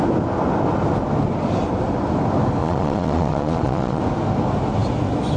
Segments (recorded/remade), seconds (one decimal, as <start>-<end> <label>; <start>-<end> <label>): 0.0-2.6 recorded; 2.6-4.0 remade; 4.0-5.4 recorded